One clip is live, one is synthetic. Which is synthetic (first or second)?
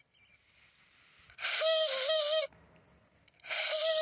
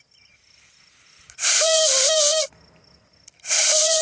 second